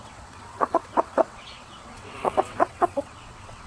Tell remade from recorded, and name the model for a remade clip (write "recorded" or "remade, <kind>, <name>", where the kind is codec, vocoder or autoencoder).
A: remade, vocoder, WaveNeXt